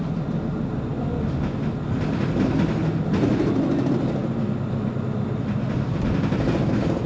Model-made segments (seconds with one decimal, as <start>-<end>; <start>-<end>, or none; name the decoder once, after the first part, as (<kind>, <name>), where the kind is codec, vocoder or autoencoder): none